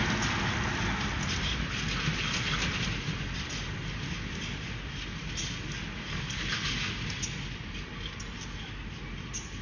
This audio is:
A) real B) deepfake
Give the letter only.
A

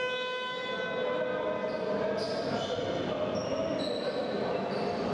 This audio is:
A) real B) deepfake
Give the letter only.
A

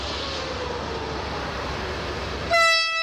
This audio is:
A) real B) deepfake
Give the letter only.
A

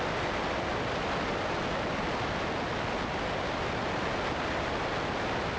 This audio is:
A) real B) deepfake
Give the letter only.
A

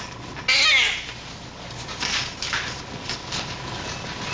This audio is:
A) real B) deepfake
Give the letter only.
A